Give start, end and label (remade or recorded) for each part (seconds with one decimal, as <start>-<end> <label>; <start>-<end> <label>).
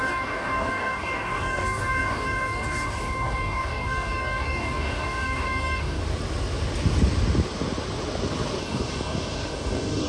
0.0-6.0 remade; 6.0-8.6 recorded; 8.6-10.1 remade